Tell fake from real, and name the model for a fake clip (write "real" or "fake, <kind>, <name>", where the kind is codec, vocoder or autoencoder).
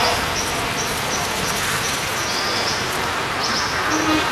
real